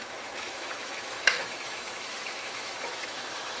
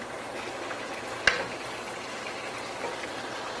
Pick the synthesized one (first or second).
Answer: first